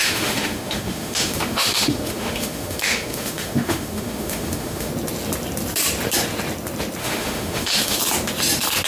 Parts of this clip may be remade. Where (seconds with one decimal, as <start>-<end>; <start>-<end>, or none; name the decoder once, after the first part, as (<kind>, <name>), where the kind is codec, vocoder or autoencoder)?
0.0-4.9 (autoencoder, DAC-VAE); 7.0-8.0